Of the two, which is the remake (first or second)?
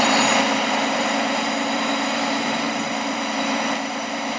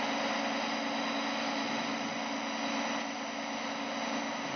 first